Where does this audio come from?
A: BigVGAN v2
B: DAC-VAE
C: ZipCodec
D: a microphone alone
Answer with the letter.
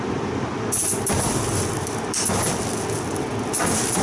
A